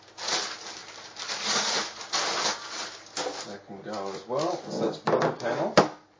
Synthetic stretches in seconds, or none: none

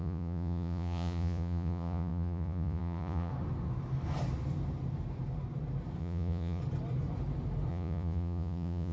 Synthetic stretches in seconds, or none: 0.0-3.3 (vocoder, Vocos); 6.0-6.6; 7.7-8.9

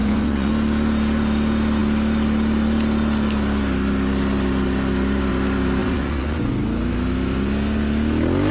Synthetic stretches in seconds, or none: 0.0-0.5 (vocoder, Vocos); 5.8-6.5